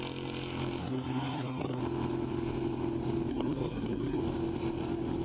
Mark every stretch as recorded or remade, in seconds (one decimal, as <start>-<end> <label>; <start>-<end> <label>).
0.0-0.8 recorded; 0.8-1.8 remade; 1.8-3.3 recorded; 3.3-4.2 remade; 4.2-5.2 recorded